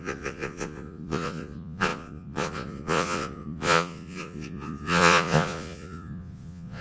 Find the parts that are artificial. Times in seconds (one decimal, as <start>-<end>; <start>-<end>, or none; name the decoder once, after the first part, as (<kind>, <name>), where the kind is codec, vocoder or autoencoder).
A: 0.0-6.8 (vocoder, Vocos)